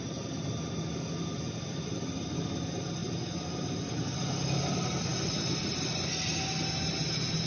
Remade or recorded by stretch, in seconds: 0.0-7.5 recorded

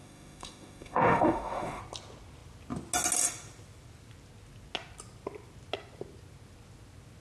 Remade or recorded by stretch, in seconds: 0.0-1.8 remade; 1.8-7.2 recorded

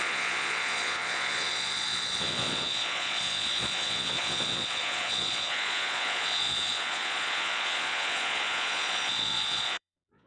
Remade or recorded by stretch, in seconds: 0.0-10.3 remade

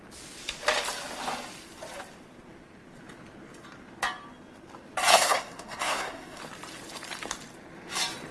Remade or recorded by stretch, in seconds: 0.0-5.1 recorded; 5.1-6.4 remade; 6.4-8.3 recorded

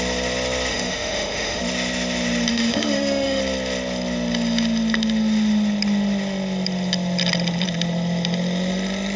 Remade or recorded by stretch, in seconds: 0.0-0.7 recorded; 0.7-1.6 remade; 1.6-2.5 recorded; 2.5-3.4 remade; 3.4-9.2 recorded